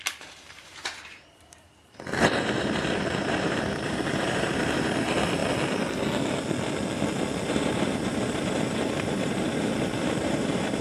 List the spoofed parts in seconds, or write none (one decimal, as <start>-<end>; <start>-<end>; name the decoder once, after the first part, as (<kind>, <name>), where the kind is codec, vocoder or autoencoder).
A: 0.0-5.4 (vocoder, BigVGAN v2); 7.5-10.8